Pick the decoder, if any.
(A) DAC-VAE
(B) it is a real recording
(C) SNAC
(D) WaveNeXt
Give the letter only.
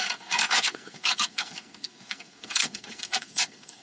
C